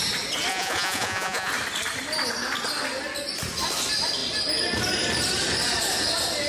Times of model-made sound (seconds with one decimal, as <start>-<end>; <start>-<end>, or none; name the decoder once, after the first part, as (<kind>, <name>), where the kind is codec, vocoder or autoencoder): 0.5-1.5 (vocoder, Vocos)